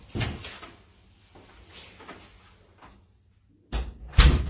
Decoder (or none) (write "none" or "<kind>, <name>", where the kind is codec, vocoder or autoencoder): none